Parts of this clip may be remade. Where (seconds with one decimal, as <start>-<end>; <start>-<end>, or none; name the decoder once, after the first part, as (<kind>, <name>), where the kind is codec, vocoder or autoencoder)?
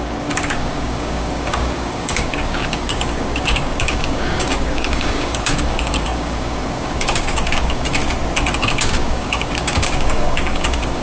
0.0-8.0 (codec, DAC); 8.6-11.0